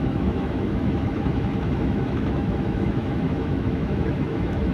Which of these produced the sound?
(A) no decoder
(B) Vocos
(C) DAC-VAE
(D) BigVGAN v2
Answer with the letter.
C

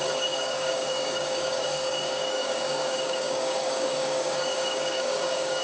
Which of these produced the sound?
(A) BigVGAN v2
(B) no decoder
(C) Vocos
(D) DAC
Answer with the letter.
D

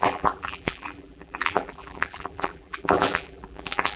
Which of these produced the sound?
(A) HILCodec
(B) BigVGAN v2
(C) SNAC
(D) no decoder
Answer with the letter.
B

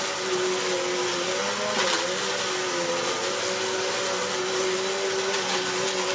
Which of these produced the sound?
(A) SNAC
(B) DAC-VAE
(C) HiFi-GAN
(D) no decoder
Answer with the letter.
D